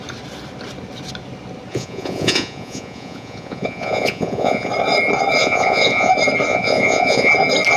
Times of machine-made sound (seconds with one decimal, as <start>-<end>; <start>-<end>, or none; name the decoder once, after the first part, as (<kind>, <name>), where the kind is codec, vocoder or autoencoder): 1.7-4.7 (vocoder, Vocos); 5.4-6.1; 6.5-7.3